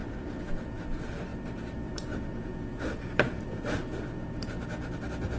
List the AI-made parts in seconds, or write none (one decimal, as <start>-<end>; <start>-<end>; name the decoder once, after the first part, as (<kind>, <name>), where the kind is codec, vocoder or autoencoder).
0.0-0.5 (vocoder, BigVGAN v2); 1.3-4.5

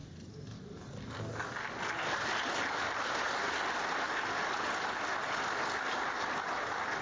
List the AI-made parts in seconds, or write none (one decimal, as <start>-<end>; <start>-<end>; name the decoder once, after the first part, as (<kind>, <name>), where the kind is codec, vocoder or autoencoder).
none

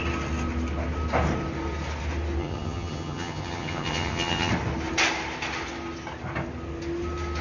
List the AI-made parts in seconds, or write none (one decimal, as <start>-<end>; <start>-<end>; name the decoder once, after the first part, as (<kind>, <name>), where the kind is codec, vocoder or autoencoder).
2.4-4.5 (vocoder, HiFi-GAN)

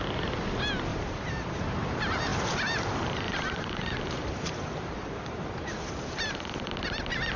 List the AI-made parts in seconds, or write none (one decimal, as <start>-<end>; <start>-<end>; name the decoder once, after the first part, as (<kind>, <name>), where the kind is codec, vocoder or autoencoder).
0.9-1.6 (vocoder, BigVGAN v2); 2.3-6.7